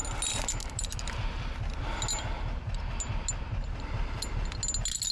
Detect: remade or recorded recorded